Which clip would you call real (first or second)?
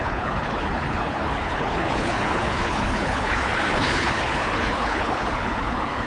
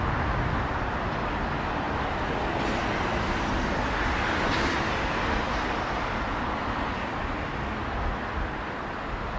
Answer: second